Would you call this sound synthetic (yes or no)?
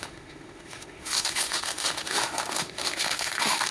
yes